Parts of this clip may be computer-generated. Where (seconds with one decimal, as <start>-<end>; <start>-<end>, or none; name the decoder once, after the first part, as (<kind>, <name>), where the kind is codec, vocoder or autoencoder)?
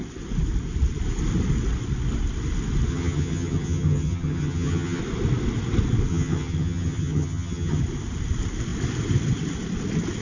2.9-5.0 (vocoder, HiFi-GAN); 6.1-7.8